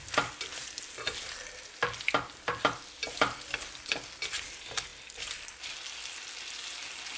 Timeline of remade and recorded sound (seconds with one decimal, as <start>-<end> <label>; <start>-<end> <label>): 0.0-7.2 recorded